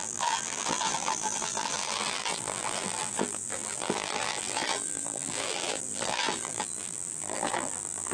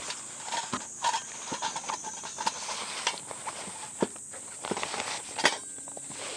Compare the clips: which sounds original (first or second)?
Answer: second